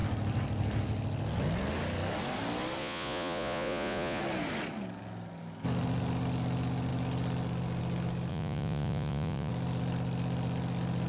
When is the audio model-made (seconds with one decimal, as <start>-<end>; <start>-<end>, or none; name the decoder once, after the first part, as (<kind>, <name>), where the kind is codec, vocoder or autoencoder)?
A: 2.8-4.2 (vocoder, Vocos); 8.3-9.5